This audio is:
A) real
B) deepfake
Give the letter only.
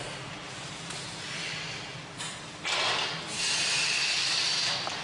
A